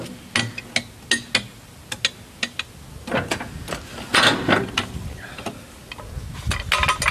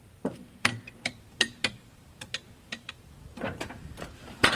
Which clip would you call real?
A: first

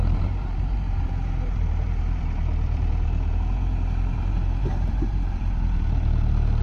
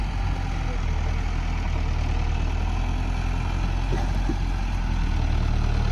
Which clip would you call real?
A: second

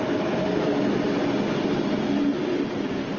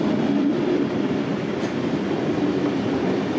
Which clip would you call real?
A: first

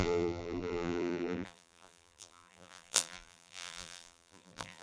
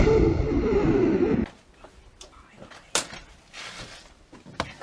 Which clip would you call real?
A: second